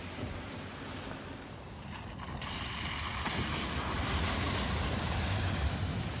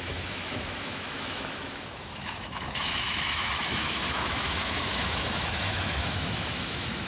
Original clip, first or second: first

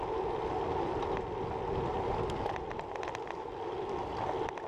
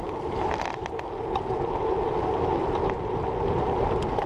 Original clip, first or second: first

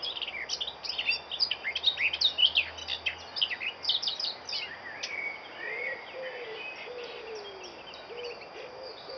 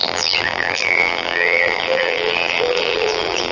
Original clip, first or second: first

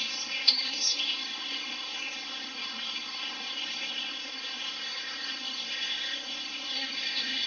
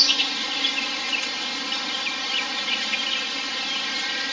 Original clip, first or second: second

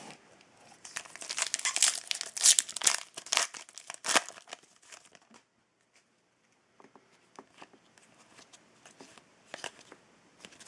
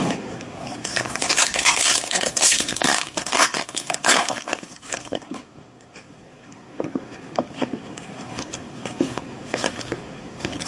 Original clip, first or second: first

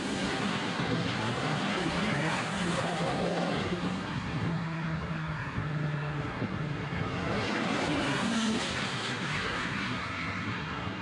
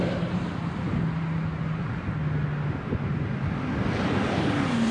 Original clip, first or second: second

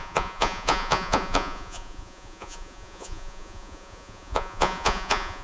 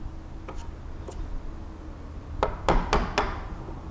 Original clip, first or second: second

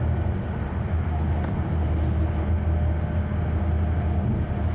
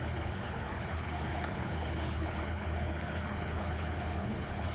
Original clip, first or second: first